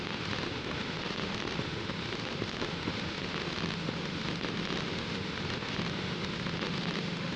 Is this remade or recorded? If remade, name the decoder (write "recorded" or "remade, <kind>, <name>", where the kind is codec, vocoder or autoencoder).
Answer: remade, autoencoder, DAC-VAE